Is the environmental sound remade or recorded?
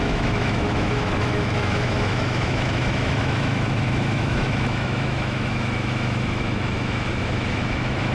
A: remade